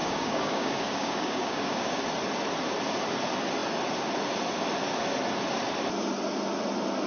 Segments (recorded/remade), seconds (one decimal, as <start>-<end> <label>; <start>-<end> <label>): 0.0-2.0 remade; 2.0-7.1 recorded